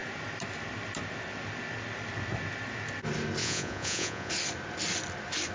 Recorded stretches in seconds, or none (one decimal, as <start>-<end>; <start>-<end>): 0.0-3.4; 4.3-5.5